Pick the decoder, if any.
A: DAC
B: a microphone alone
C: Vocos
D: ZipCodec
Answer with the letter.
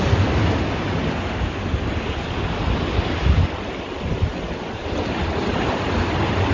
B